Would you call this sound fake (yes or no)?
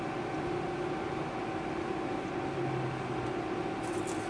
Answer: no